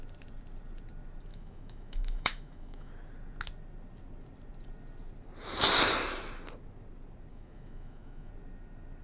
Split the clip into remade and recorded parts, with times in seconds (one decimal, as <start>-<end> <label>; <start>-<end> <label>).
0.0-1.3 recorded; 1.3-2.9 remade; 2.9-7.3 recorded; 7.3-8.3 remade; 8.3-9.0 recorded